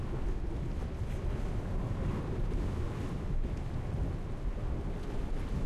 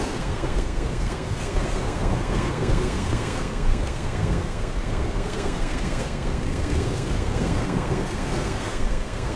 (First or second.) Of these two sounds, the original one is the first